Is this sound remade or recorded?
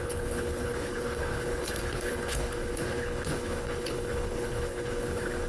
remade